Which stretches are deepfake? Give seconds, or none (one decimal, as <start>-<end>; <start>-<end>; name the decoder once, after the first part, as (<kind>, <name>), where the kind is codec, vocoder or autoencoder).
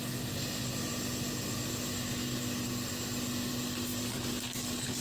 none